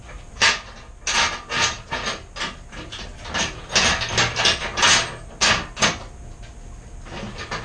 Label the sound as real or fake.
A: real